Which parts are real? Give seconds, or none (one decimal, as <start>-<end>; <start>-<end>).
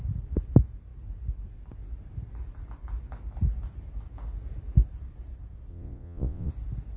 0.0-5.7; 6.5-7.0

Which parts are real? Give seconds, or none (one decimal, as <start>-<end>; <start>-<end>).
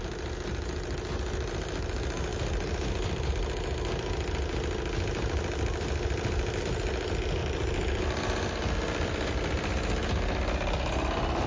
0.0-7.4; 9.3-11.5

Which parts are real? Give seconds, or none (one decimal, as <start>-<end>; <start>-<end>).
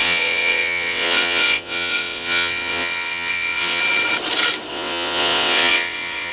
3.8-4.7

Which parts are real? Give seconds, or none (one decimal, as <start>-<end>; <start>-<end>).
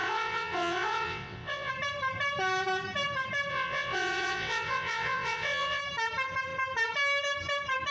1.7-3.5; 5.8-7.9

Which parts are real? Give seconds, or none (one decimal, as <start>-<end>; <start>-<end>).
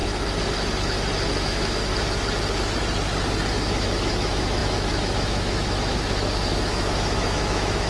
0.0-1.4; 1.9-3.5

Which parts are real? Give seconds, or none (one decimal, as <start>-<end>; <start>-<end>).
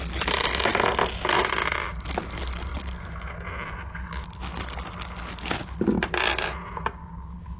0.0-7.6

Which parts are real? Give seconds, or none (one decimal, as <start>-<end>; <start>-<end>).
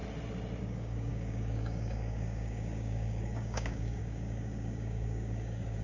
0.0-0.6